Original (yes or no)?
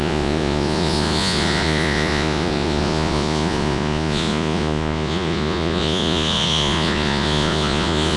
no